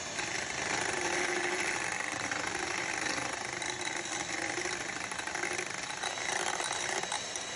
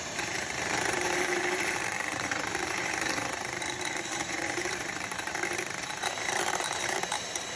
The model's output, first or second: second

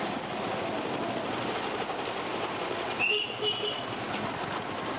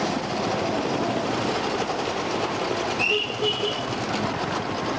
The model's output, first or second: second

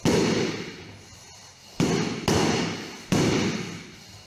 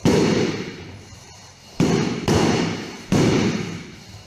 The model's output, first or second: second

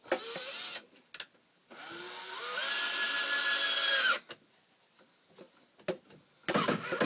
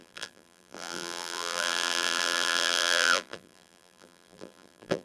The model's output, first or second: second